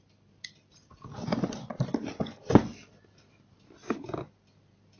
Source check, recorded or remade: recorded